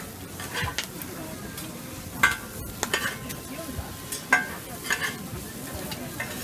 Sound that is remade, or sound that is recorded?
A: recorded